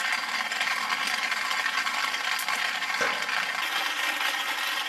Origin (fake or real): real